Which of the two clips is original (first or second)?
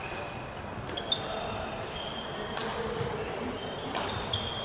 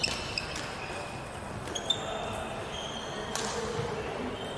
second